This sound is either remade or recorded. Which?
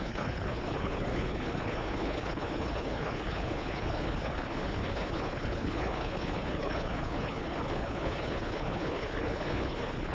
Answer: remade